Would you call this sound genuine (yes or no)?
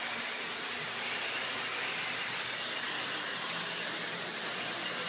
yes